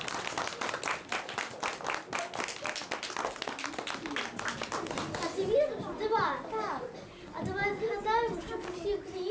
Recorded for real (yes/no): yes